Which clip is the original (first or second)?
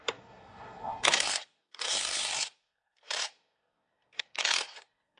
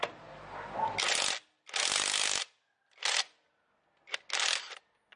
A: second